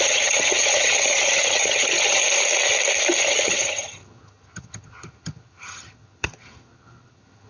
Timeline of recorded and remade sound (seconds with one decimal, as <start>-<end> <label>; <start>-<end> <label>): 0.0-2.2 remade; 2.2-3.2 recorded; 3.2-7.5 remade